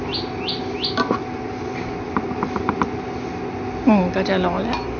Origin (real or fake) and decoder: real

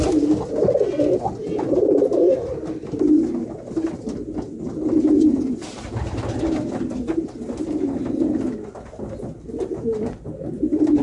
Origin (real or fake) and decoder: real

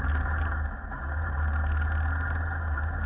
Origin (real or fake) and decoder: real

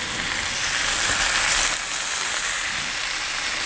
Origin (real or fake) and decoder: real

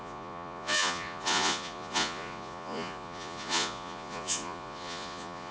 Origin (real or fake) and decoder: fake, vocoder, Vocos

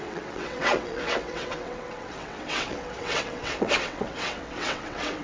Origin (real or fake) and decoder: fake, vocoder, WaveNeXt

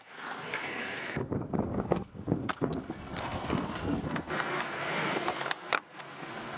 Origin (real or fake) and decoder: fake, codec, SNAC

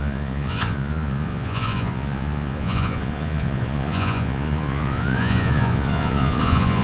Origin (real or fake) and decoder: fake, vocoder, Vocos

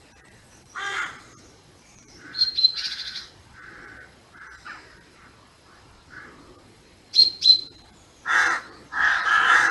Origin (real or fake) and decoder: fake, vocoder, Vocos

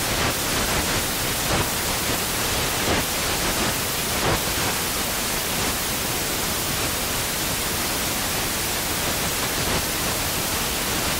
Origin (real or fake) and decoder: real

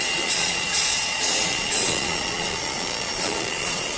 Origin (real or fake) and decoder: fake, vocoder, Vocos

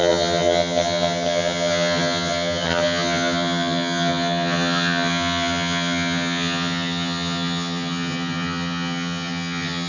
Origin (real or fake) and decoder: fake, vocoder, HiFi-GAN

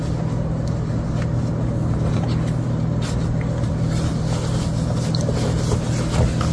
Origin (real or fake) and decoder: real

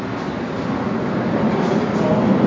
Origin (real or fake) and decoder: real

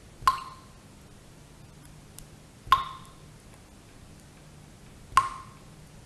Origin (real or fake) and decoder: real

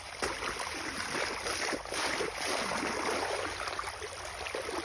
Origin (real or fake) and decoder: real